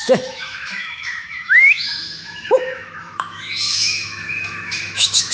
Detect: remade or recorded remade